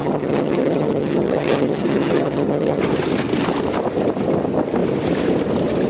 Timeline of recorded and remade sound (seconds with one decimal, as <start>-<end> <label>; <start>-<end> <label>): 0.0-2.8 remade; 2.8-5.9 recorded